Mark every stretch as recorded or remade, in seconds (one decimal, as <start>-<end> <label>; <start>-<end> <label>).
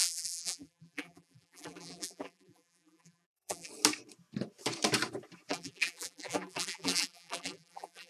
0.0-3.7 remade; 3.7-5.5 recorded; 5.5-8.1 remade